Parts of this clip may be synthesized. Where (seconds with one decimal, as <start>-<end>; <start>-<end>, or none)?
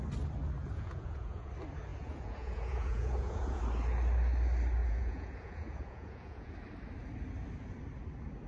0.6-1.5; 1.9-3.6; 4.8-6.5